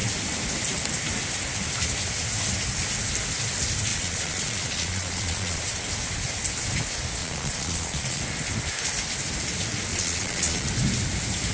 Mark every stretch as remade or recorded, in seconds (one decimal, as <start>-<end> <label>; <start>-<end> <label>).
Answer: 0.0-3.9 recorded; 3.9-5.6 remade; 5.6-7.2 recorded; 7.2-8.2 remade; 8.2-9.9 recorded; 9.9-10.7 remade; 10.7-11.5 recorded